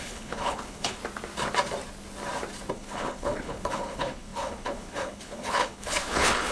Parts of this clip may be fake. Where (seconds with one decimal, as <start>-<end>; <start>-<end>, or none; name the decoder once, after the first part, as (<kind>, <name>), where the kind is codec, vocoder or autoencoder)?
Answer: 0.0-1.0 (codec, HILCodec); 2.7-6.5

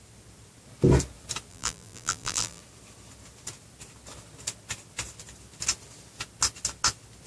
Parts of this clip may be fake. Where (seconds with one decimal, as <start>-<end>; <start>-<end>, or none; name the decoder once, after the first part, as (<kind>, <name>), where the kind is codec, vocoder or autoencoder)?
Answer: 1.5-2.6 (vocoder, BigVGAN v2)

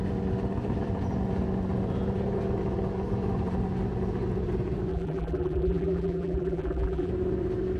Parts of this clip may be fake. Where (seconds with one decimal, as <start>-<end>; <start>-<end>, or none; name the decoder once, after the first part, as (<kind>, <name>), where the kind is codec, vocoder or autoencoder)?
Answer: 4.9-7.1 (vocoder, BigVGAN v2)